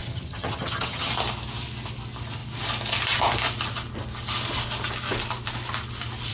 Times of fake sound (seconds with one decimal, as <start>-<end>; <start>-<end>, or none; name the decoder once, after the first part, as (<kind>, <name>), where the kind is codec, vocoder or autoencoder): 0.0-1.1 (vocoder, HiFi-GAN)